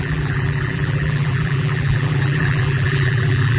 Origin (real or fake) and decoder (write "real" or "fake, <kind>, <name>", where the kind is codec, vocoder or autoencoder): fake, vocoder, BigVGAN v2